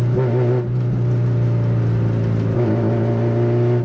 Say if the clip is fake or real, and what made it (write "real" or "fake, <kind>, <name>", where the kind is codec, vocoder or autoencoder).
real